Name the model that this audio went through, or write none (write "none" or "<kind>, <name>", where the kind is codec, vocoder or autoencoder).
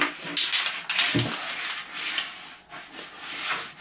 none